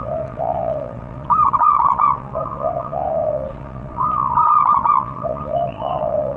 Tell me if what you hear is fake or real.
fake